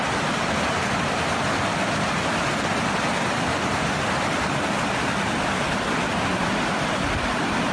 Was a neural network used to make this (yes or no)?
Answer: no